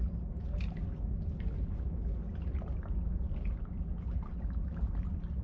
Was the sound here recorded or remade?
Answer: recorded